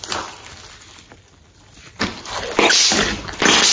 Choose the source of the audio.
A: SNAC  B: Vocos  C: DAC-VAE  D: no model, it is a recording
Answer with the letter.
D